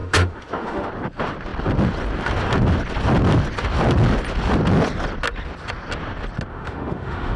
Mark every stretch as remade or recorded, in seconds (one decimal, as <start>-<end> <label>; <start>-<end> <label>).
0.0-0.9 remade; 0.9-6.5 recorded; 6.5-7.4 remade

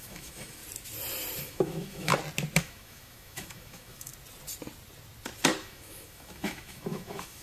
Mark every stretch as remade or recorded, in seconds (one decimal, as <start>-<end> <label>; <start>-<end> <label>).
0.0-0.6 remade; 0.6-1.4 recorded; 1.4-2.1 remade; 2.1-2.6 recorded; 2.6-4.1 remade; 4.1-5.6 recorded; 5.6-7.4 remade